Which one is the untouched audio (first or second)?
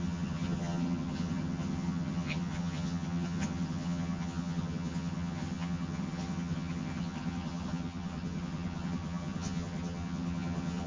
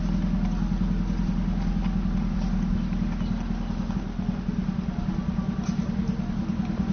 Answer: second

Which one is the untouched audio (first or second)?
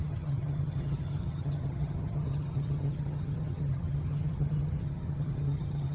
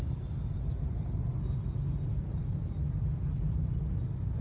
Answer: second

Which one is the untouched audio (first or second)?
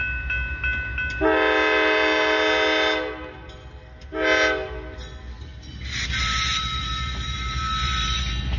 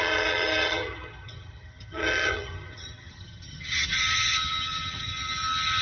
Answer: first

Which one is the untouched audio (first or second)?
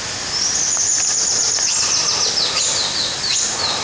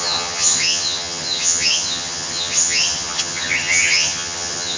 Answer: first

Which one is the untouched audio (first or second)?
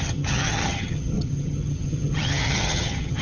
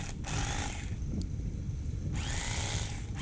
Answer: second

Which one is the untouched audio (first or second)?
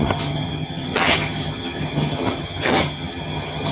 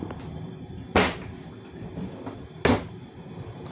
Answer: second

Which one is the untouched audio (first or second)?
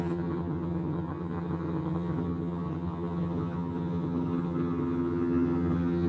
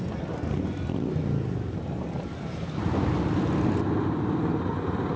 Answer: second